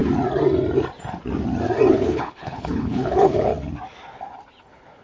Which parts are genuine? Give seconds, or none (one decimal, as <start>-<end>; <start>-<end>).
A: 0.0-1.9; 3.5-4.6